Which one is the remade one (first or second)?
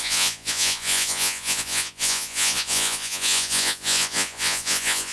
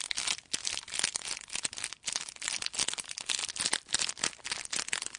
first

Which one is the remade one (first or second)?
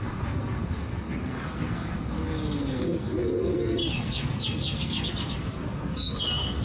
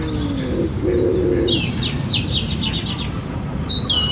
first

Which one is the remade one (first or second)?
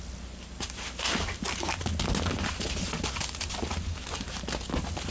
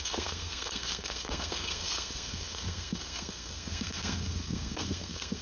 second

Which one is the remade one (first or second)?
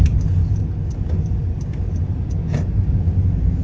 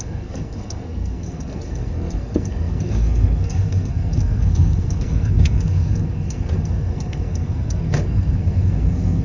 second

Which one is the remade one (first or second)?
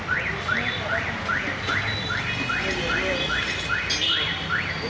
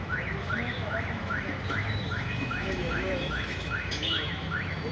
second